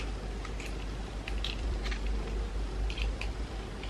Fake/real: fake